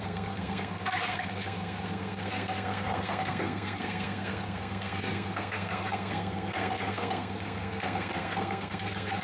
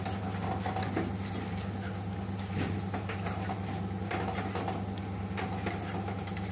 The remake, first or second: first